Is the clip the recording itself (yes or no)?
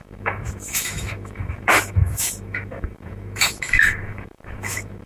no